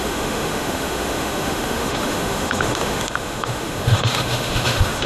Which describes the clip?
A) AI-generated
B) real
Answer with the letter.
A